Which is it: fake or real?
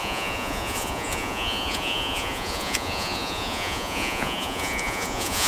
fake